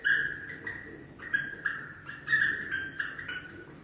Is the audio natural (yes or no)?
yes